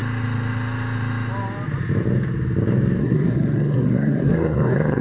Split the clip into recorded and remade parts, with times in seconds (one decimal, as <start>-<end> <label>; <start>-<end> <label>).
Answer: 0.0-3.0 recorded; 3.0-5.0 remade

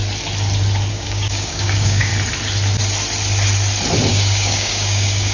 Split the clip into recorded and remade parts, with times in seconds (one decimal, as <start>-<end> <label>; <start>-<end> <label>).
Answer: 0.0-0.9 recorded; 0.9-2.1 remade; 2.1-4.1 recorded; 4.1-5.3 remade

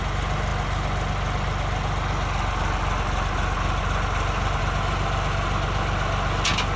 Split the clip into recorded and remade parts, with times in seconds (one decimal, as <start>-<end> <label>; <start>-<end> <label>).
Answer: 0.0-6.8 recorded

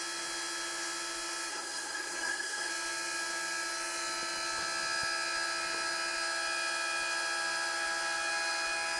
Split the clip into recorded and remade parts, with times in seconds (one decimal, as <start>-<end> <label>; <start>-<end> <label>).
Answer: 0.0-1.5 recorded; 1.5-2.7 remade; 2.7-9.0 recorded

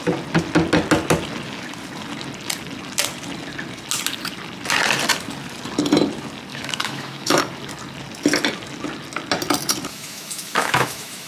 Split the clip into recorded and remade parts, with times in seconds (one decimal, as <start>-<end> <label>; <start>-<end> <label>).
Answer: 0.0-6.5 recorded; 6.5-7.4 remade; 7.4-9.9 recorded; 9.9-11.3 remade

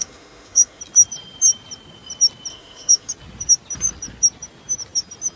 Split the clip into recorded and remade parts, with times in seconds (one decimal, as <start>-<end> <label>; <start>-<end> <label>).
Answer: 0.0-0.8 remade; 0.8-2.5 recorded; 2.5-3.1 remade; 3.1-5.4 recorded